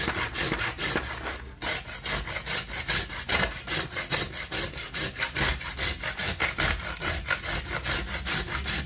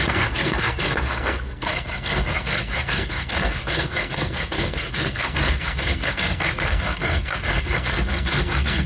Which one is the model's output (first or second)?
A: second